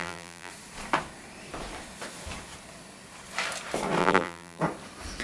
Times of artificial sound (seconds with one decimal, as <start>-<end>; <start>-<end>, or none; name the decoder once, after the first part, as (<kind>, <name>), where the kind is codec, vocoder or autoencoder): 0.0-0.5 (vocoder, BigVGAN v2); 4.0-4.6